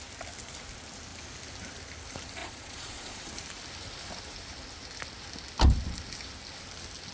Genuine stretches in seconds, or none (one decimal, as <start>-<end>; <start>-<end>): 0.0-2.4; 3.3-7.1

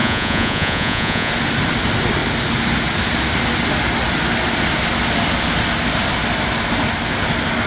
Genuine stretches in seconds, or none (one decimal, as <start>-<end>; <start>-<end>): 1.3-7.7